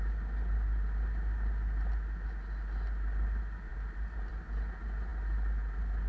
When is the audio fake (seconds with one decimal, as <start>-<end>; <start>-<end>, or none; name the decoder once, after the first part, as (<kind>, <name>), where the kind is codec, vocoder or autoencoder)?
none